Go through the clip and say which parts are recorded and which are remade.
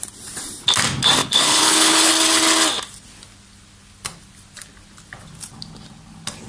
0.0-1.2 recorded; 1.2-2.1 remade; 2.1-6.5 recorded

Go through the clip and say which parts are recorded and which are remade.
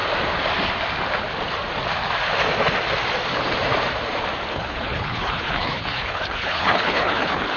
0.0-4.5 recorded; 4.5-7.6 remade